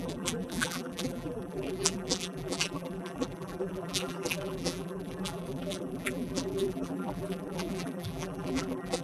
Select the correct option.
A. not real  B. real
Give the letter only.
A